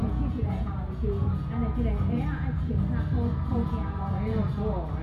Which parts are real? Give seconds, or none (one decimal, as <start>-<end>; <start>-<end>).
2.8-3.5; 4.4-5.0